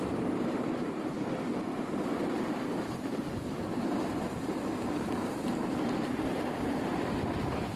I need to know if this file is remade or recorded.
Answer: remade